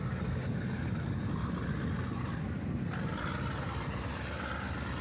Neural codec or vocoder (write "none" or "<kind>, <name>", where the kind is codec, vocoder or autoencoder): none